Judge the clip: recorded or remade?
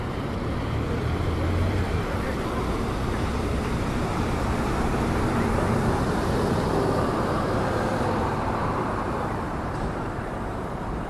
remade